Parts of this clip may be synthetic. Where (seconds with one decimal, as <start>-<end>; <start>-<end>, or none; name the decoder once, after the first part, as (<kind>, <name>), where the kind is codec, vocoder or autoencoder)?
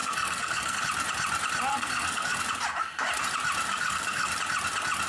0.0-0.8 (codec, SNAC); 1.7-2.4; 3.7-4.3